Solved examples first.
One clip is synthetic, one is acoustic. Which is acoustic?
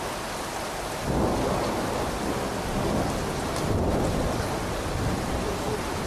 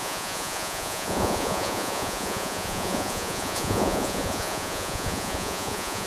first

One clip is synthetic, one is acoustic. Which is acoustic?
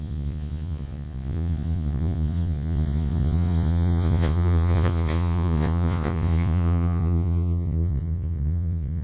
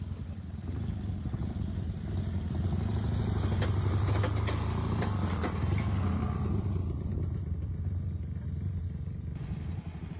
second